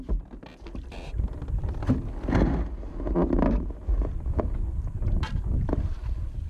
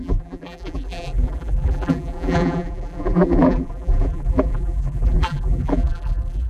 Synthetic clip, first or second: second